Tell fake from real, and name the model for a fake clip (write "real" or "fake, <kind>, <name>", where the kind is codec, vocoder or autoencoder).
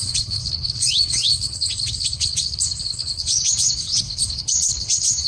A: fake, codec, HILCodec